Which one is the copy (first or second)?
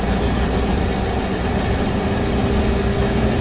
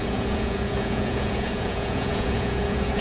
second